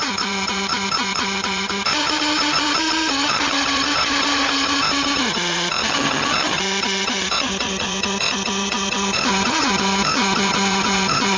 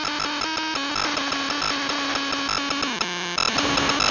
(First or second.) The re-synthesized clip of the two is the first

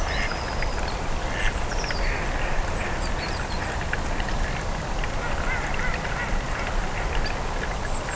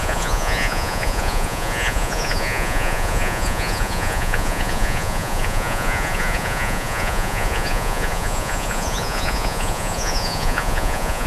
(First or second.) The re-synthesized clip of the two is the second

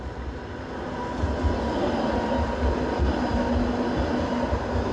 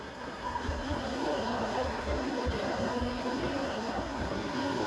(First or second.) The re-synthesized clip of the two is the second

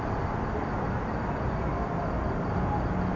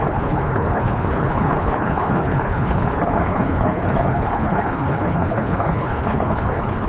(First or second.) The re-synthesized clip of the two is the second